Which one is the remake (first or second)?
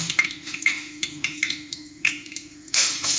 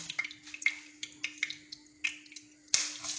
first